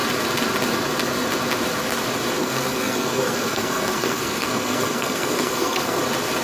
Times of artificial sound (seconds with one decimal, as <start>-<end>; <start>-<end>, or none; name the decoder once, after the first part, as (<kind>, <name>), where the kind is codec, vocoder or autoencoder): 2.4-6.0 (codec, SNAC)